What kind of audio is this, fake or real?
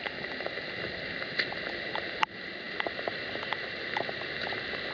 real